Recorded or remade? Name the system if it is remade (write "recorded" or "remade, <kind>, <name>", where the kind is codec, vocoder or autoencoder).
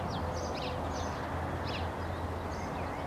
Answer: recorded